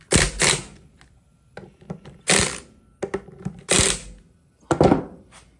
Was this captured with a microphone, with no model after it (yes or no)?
yes